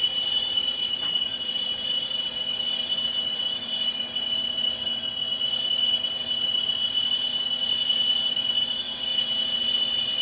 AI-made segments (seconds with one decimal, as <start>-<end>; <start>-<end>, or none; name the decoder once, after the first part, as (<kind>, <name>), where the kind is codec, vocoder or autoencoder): 0.0-10.2 (vocoder, WaveNeXt)